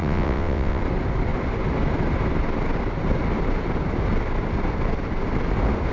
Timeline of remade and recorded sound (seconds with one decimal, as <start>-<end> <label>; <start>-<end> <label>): 0.0-0.8 remade; 0.8-5.9 recorded